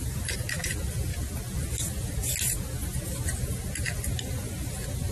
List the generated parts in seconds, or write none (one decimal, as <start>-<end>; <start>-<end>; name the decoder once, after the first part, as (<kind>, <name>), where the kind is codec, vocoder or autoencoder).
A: none